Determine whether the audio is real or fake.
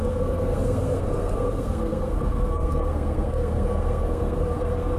fake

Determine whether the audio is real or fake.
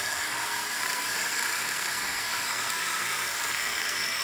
fake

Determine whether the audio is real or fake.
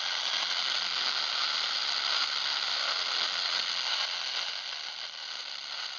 real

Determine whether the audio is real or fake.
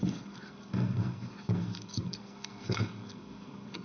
fake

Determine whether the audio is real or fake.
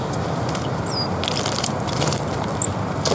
real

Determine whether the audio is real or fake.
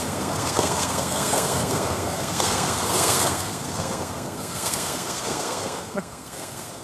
fake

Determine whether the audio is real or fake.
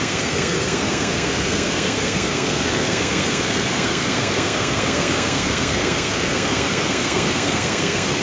fake